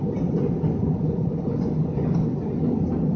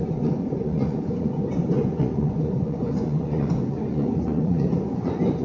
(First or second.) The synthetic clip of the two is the second